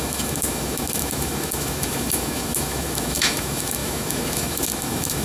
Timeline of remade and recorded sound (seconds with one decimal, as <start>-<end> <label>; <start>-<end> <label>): 0.0-5.2 remade